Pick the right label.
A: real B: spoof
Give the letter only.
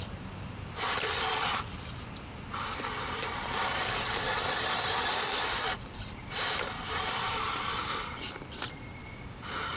B